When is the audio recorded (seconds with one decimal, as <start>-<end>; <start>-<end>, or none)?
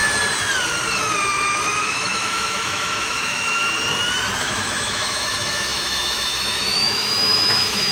0.0-1.8; 3.6-4.4